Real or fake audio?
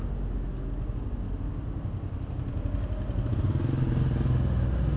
real